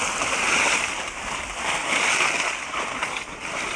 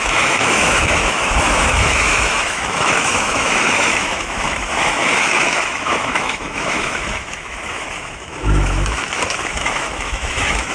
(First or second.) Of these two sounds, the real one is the first